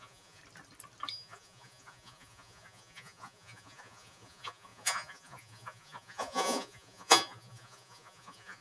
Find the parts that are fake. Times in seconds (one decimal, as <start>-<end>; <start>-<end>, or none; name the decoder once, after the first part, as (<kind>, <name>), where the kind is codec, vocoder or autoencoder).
0.0-0.4 (vocoder, Vocos); 1.1-8.6

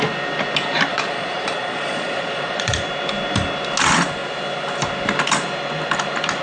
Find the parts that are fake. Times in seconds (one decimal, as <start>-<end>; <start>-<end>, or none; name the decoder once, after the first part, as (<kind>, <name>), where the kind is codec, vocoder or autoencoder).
0.9-2.8 (vocoder, Vocos)

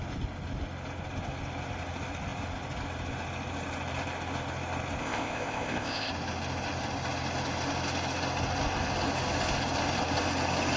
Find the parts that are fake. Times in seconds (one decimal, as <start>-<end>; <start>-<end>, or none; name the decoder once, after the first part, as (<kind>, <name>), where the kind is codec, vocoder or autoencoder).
5.0-6.1 (codec, ZipCodec)

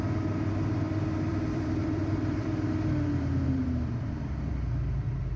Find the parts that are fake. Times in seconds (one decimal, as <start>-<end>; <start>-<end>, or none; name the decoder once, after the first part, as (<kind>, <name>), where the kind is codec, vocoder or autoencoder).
1.3-4.5 (vocoder, BigVGAN v2)

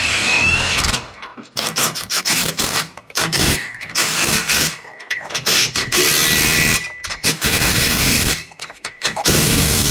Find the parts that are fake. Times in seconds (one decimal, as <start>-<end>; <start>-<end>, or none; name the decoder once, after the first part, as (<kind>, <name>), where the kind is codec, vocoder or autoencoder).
0.0-6.0 (codec, DAC); 7.1-9.9